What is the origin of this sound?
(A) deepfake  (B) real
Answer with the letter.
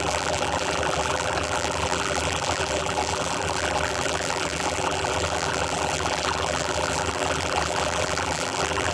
A